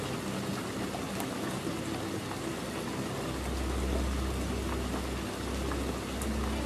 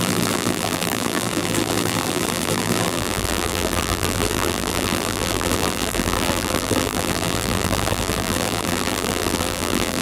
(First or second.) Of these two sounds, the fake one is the second